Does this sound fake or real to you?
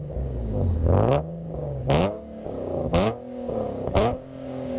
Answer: fake